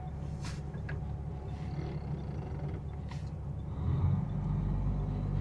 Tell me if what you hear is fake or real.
real